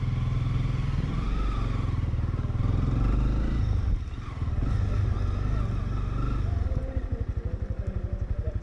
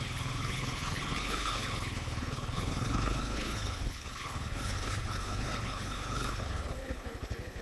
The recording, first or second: first